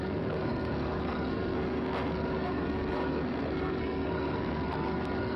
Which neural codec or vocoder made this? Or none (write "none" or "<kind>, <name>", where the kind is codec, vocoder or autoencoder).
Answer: codec, SNAC